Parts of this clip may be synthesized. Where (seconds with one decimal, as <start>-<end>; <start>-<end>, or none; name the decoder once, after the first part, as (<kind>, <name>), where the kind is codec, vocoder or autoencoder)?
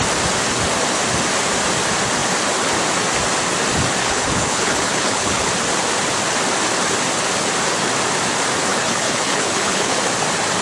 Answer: 4.0-5.5 (codec, HILCodec); 8.7-10.0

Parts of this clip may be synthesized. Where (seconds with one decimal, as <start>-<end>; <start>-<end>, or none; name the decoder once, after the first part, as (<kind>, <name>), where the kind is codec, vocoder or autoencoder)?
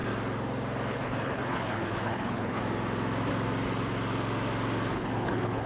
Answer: 0.9-2.6 (codec, HILCodec); 4.9-5.7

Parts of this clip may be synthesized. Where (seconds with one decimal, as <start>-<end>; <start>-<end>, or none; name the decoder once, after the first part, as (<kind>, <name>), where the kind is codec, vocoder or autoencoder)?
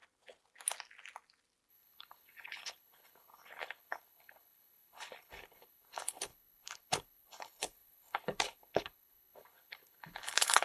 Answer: 1.7-10.6 (codec, HILCodec)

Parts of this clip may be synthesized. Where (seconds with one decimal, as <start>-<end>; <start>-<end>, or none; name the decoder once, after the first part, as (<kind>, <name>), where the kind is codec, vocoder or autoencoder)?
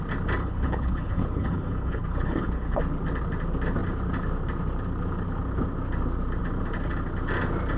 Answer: 0.4-2.8 (codec, HILCodec)